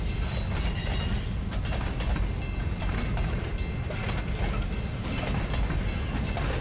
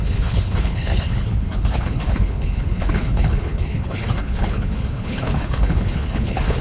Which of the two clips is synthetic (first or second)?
second